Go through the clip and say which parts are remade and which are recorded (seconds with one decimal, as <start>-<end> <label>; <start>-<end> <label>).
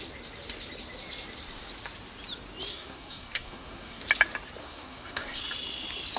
0.0-2.7 recorded; 2.7-4.0 remade; 4.0-4.6 recorded; 4.6-5.4 remade; 5.4-6.2 recorded